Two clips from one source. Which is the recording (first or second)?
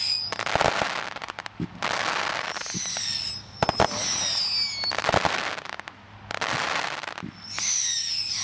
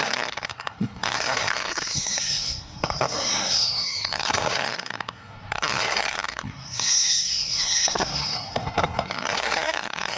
first